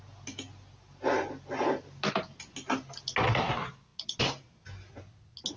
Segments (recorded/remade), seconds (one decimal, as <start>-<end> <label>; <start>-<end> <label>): 0.0-5.6 recorded